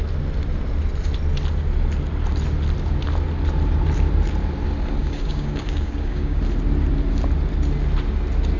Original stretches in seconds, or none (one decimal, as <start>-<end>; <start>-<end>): 0.0-5.0; 6.4-8.6